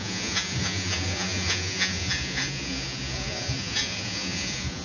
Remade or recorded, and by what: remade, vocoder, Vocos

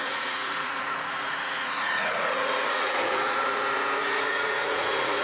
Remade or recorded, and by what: remade, vocoder, Vocos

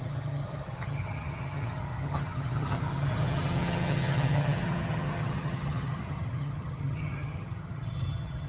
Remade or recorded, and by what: remade, vocoder, HiFi-GAN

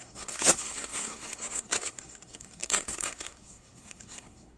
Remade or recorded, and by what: remade, codec, SNAC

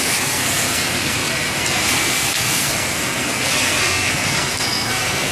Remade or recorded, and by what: remade, codec, SNAC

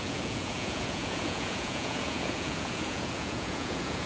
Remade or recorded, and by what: remade, vocoder, Vocos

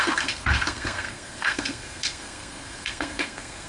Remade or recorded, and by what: remade, codec, SNAC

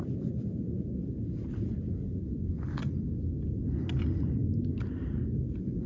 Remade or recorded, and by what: recorded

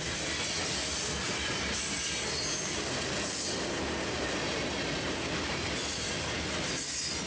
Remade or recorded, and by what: recorded